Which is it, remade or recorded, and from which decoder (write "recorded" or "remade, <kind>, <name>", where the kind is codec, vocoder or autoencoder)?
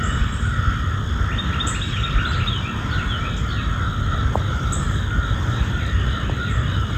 recorded